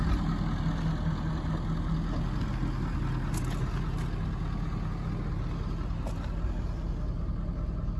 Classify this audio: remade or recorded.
recorded